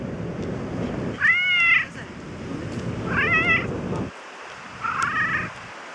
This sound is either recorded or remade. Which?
recorded